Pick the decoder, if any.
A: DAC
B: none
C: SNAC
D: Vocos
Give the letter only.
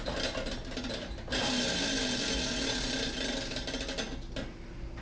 B